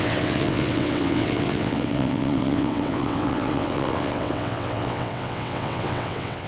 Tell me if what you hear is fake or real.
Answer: fake